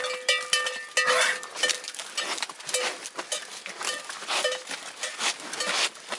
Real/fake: real